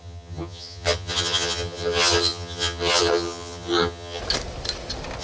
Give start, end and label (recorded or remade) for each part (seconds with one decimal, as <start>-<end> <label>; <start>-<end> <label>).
0.0-4.2 remade; 4.2-5.2 recorded

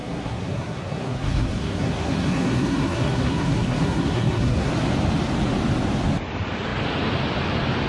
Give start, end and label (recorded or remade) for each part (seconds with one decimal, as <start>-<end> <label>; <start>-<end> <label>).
0.0-4.7 remade; 4.7-7.9 recorded

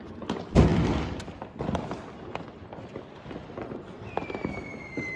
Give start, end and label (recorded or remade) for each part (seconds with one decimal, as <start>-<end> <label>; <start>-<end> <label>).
0.0-5.2 recorded

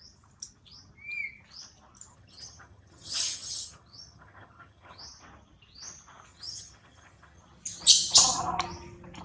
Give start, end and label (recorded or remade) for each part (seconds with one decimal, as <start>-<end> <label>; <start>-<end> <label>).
0.0-2.1 recorded; 2.1-5.0 remade; 5.0-6.3 recorded; 6.3-7.4 remade; 7.4-9.2 recorded

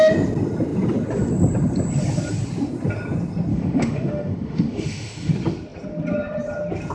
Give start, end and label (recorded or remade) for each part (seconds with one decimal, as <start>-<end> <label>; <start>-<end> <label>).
0.0-3.5 recorded; 3.5-5.3 remade; 5.3-6.9 recorded